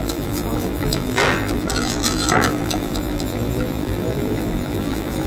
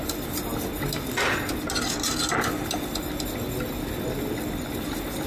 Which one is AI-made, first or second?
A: first